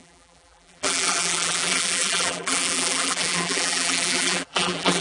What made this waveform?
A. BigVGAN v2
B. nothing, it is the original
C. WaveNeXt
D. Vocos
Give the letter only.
A